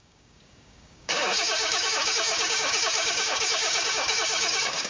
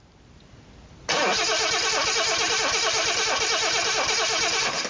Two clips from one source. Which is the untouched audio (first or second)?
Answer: second